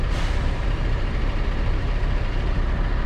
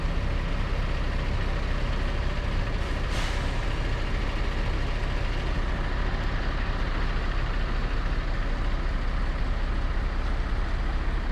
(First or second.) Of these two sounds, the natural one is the second